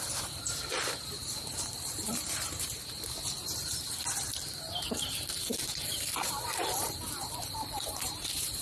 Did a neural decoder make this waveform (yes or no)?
yes